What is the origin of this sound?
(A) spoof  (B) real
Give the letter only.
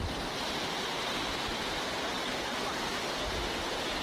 B